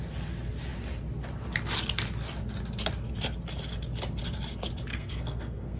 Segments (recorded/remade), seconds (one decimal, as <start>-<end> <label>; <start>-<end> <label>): 0.0-4.9 recorded; 4.9-5.8 remade